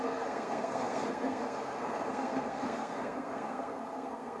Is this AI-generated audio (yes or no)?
yes